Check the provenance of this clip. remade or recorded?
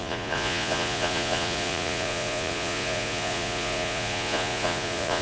remade